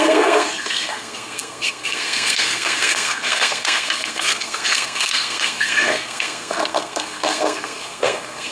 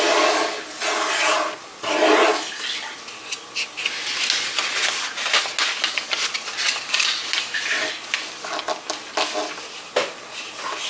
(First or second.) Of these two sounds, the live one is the second